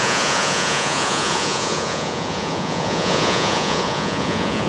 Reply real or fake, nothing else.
fake